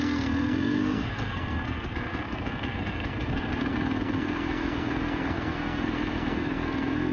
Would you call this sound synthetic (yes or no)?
yes